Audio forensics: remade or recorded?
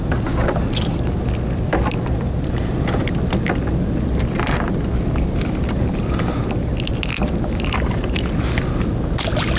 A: recorded